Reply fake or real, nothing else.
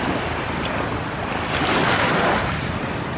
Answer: real